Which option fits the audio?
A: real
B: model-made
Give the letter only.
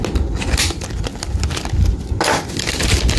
A